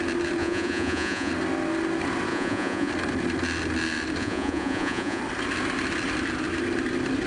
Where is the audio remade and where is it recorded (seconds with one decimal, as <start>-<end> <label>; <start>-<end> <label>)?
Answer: 0.0-0.4 recorded; 0.4-1.3 remade; 1.3-2.3 recorded; 2.3-2.9 remade; 2.9-4.2 recorded; 4.2-5.2 remade; 5.2-7.3 recorded